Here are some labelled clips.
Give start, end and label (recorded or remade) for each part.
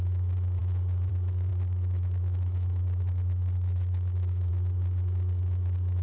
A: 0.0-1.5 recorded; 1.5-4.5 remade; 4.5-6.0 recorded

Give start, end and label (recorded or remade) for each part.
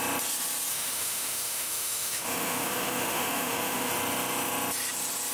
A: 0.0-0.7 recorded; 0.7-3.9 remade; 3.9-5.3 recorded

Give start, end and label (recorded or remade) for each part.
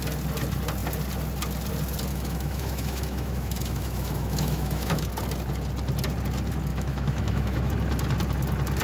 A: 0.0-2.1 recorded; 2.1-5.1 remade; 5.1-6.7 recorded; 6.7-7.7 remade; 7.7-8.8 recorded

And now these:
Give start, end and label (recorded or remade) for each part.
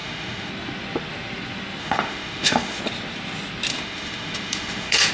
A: 0.0-0.5 remade; 0.5-1.8 recorded; 1.8-2.8 remade; 2.8-3.7 recorded; 3.7-5.1 remade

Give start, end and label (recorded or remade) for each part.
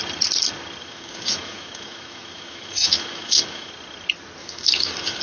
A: 0.0-0.8 recorded; 0.8-3.7 remade; 3.7-4.4 recorded; 4.4-5.2 remade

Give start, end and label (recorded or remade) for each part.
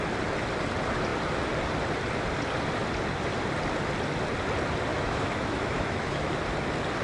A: 0.0-4.9 recorded; 4.9-6.3 remade; 6.3-7.0 recorded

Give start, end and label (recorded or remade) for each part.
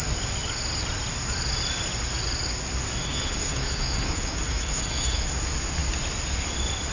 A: 0.0-3.0 recorded; 3.0-5.3 remade; 5.3-6.9 recorded